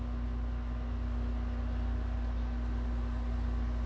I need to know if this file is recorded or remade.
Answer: recorded